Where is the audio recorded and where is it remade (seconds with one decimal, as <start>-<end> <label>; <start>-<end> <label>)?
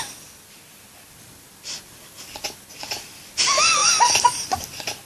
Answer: 0.0-3.8 recorded; 3.8-4.6 remade; 4.6-5.1 recorded